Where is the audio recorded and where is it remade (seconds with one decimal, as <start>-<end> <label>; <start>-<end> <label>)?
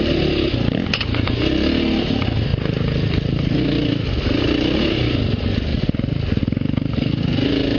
0.0-7.8 recorded